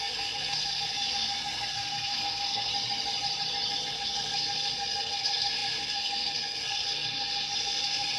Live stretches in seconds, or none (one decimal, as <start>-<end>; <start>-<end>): 2.7-3.9